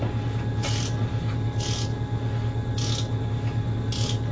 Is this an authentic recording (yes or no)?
yes